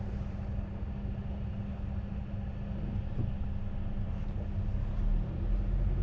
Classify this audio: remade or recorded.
recorded